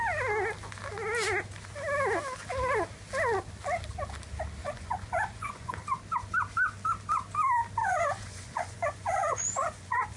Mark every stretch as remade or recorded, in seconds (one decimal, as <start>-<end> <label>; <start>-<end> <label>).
0.0-4.6 recorded; 4.6-5.8 remade; 5.8-7.8 recorded; 7.8-10.2 remade